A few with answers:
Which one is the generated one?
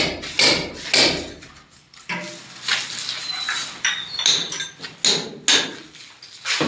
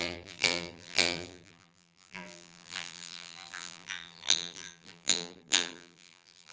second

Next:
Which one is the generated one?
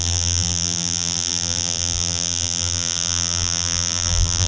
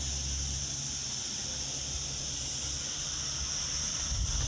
first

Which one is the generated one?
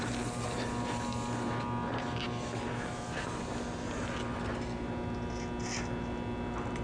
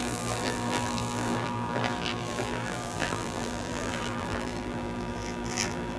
second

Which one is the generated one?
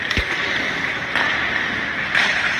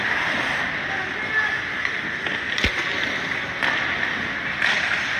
first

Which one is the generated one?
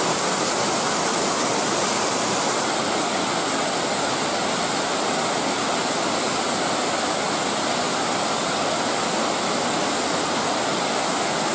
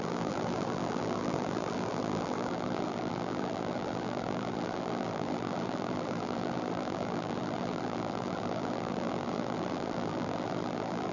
second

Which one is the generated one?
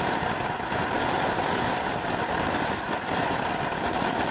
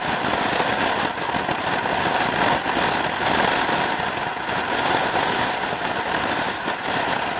first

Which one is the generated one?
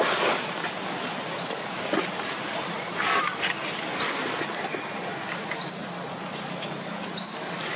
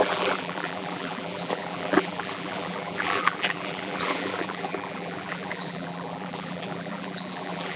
second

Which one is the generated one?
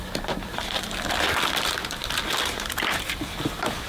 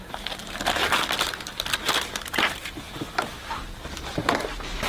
first